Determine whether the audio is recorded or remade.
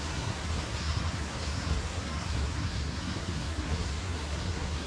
remade